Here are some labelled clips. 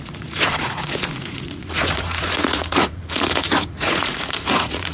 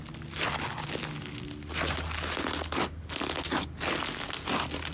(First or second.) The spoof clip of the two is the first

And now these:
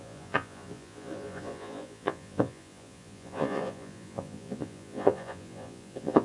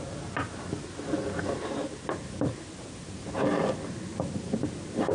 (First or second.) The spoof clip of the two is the first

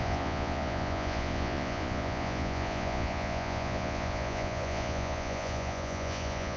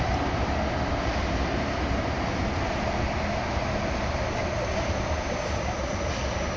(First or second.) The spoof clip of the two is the first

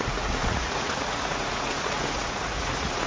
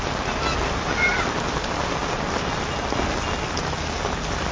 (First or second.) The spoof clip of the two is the first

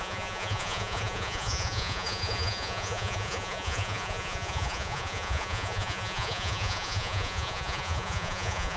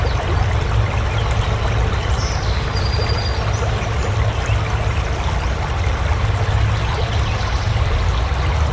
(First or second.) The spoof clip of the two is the first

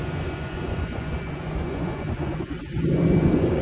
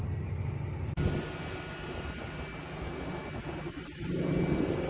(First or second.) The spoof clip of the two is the first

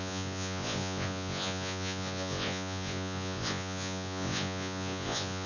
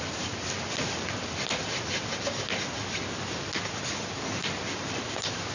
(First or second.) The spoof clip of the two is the first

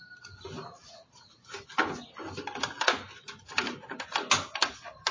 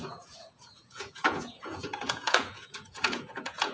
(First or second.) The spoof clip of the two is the second